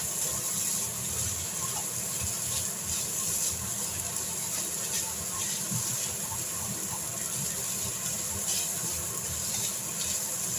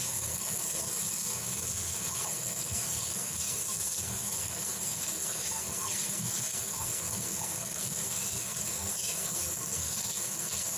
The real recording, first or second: first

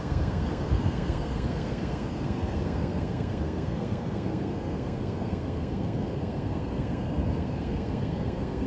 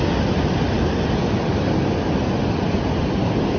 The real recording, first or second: second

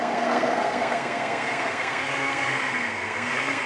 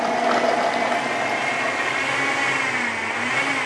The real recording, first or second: second